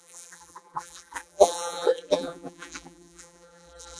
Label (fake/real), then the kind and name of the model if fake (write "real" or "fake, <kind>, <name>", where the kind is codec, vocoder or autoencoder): fake, vocoder, BigVGAN v2